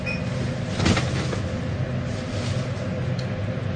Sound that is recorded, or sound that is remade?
recorded